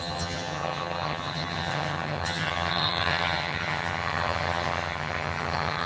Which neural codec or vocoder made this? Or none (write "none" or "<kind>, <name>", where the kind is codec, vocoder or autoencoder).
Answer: vocoder, HiFi-GAN